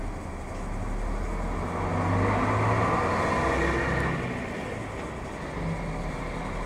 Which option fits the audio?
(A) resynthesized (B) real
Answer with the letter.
B